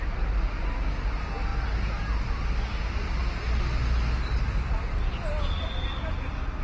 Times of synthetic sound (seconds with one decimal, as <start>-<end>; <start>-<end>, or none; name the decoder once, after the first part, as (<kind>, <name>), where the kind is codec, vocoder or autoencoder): none